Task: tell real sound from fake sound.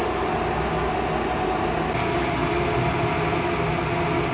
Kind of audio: real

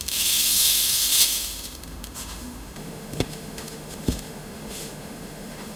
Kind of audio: fake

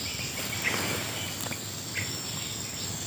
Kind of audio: real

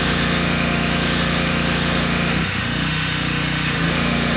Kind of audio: fake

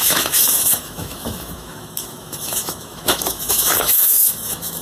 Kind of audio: fake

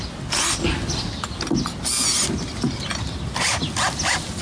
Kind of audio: real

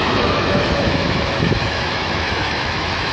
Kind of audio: fake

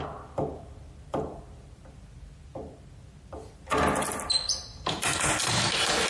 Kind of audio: real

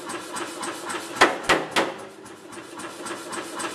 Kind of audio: real